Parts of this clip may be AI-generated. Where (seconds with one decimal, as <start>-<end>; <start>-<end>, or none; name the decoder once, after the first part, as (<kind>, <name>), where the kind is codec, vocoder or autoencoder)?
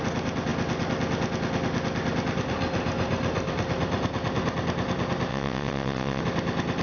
5.3-6.2 (vocoder, WaveNeXt)